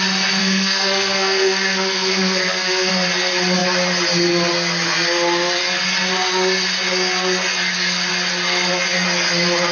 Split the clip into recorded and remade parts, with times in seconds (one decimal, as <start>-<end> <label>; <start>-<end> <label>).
0.0-0.4 recorded; 0.4-2.9 remade; 2.9-9.7 recorded